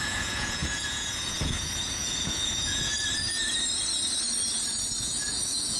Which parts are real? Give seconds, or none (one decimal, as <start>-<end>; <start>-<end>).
2.9-5.0